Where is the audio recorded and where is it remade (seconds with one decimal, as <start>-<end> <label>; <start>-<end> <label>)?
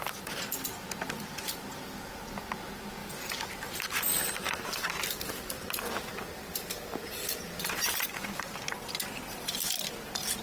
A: 0.0-3.0 recorded; 3.0-5.6 remade; 5.6-6.1 recorded; 6.1-8.6 remade; 8.6-10.4 recorded